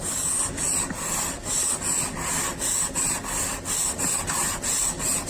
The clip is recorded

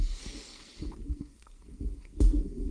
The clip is remade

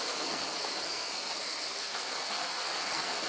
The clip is remade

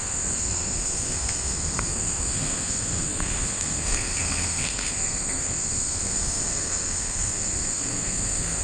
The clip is remade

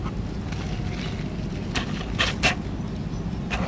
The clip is recorded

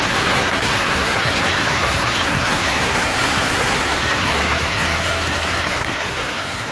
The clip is remade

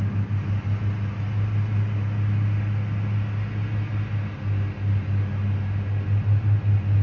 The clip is recorded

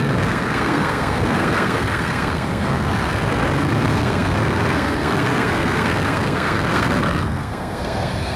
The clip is remade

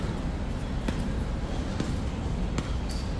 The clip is recorded